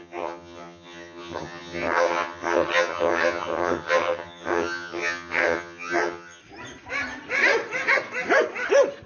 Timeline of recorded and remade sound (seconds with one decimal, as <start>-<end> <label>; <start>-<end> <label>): 0.0-6.4 remade; 6.4-9.1 recorded